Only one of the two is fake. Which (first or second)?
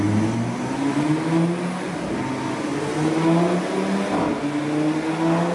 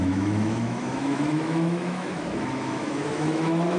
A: second